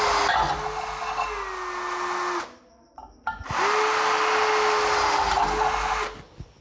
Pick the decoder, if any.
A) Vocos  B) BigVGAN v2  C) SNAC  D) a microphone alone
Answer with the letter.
D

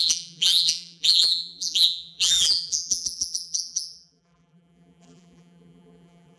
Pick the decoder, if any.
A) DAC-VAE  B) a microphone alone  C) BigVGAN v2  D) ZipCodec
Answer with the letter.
C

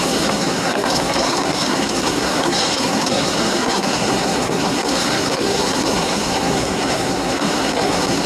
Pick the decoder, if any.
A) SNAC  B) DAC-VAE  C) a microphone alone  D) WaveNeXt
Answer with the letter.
A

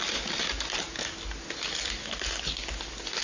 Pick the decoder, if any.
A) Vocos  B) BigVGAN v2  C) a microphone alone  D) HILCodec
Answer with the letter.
C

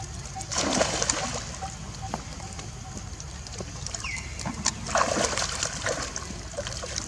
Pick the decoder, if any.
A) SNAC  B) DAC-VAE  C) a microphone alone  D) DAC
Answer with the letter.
C